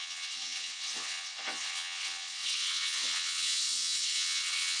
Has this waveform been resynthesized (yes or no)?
yes